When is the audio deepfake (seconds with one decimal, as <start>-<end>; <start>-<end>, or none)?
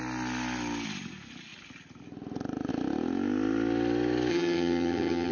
4.3-5.3